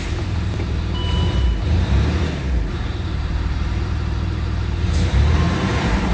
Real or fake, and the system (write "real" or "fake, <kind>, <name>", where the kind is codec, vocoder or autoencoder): fake, vocoder, BigVGAN v2